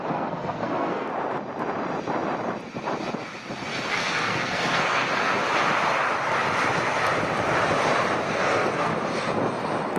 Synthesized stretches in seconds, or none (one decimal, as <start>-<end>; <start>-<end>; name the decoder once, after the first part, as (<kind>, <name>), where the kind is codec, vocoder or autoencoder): 0.0-1.1 (codec, SNAC); 3.9-5.4; 8.3-8.9